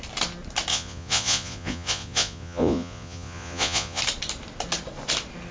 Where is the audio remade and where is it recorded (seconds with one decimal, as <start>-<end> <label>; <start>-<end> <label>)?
0.0-0.7 recorded; 0.7-4.0 remade; 4.0-5.5 recorded